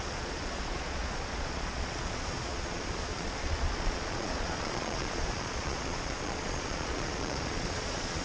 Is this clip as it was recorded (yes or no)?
no